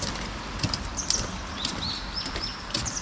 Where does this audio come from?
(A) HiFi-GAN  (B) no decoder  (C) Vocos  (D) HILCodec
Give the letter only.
B